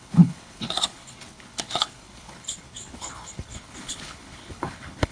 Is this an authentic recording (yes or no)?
no